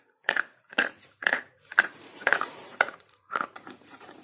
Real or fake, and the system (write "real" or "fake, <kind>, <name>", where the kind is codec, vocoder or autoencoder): fake, vocoder, Vocos